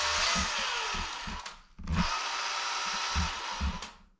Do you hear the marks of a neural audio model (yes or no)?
no